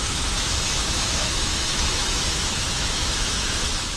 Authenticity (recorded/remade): remade